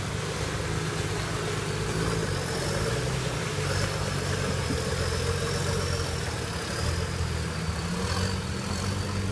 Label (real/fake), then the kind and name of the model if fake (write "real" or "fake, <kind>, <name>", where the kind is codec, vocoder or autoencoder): real